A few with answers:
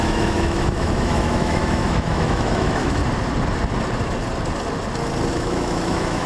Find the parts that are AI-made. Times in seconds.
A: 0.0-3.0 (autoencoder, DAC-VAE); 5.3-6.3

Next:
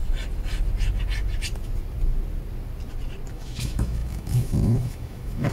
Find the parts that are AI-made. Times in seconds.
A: 3.3-5.5 (autoencoder, DAC-VAE)

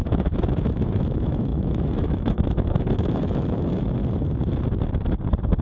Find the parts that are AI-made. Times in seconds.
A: 0.0-4.0 (autoencoder, DAC-VAE)